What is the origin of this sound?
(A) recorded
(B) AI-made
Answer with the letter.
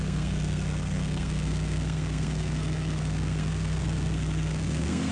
B